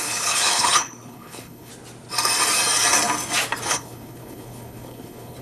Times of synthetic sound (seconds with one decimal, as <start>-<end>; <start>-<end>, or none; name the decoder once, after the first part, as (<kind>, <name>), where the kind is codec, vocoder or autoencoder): 0.0-1.7 (codec, HILCodec); 3.7-5.4